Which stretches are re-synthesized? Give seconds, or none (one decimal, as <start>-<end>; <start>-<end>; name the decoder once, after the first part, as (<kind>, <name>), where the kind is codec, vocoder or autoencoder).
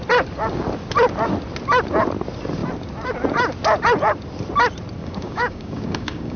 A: 5.0-6.4 (codec, DAC)